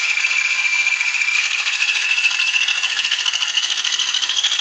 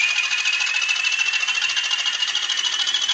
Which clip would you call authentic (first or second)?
second